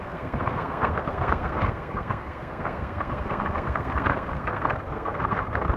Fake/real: fake